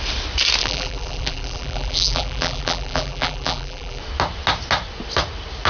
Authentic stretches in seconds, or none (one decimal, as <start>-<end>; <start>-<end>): 0.0-0.6; 4.0-5.7